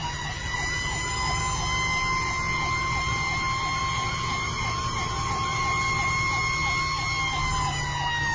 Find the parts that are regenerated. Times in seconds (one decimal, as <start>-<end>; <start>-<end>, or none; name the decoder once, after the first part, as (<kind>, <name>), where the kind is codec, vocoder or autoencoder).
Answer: 0.0-1.4 (vocoder, BigVGAN v2); 2.5-6.8